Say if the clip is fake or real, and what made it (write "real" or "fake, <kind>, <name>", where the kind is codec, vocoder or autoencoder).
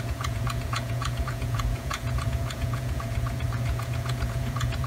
fake, vocoder, Vocos